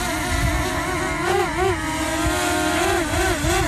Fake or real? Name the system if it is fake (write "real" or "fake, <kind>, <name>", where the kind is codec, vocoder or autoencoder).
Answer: real